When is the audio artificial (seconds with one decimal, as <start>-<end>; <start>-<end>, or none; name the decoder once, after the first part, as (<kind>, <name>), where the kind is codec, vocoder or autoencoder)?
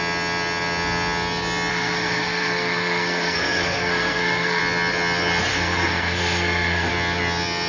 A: 1.7-4.6 (codec, SNAC); 5.5-6.9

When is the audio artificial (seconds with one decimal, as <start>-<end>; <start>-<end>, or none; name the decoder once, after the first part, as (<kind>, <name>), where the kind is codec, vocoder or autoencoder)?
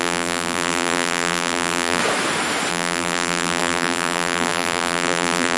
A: 0.0-2.0 (vocoder, BigVGAN v2); 2.7-5.6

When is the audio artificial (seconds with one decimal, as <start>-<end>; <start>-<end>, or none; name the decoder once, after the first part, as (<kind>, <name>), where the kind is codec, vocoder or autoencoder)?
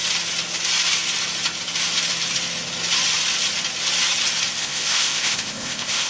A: 4.6-6.1 (codec, ZipCodec)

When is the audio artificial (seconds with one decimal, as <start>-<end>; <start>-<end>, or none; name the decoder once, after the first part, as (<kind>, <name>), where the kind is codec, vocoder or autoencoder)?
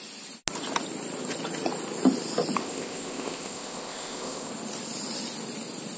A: 2.6-4.5 (codec, ZipCodec)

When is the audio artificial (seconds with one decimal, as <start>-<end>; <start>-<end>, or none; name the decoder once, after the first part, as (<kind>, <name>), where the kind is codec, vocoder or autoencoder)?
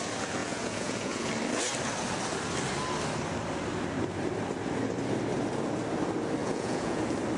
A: 0.4-1.3 (vocoder, Vocos); 6.4-7.0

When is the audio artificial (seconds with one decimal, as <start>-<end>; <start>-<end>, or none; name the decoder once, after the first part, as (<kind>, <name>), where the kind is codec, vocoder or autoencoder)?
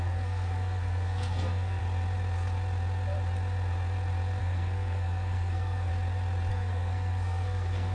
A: 0.0-1.8 (codec, SNAC); 4.4-5.9; 6.5-7.9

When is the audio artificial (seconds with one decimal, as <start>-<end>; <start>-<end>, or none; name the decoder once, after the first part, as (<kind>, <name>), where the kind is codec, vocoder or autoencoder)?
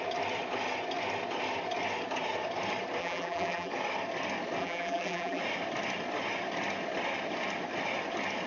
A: 3.0-3.7 (vocoder, BigVGAN v2); 4.6-5.4